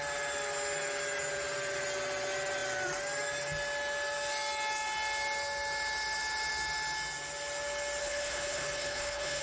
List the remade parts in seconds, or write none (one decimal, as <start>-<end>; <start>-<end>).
8.0-9.4